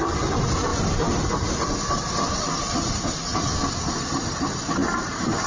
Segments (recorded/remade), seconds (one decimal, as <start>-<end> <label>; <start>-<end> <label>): 0.0-5.5 recorded